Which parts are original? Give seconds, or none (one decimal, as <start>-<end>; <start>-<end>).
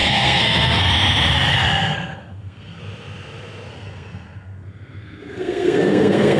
0.9-1.5; 2.8-3.7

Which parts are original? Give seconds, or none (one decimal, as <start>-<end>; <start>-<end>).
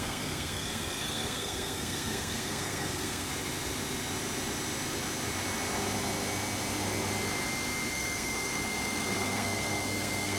3.3-7.9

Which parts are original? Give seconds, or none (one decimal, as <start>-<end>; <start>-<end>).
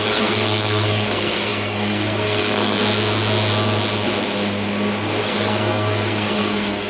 2.8-5.2